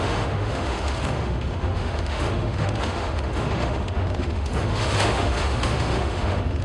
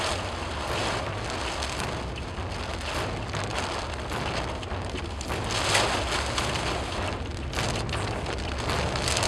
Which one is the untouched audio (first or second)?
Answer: second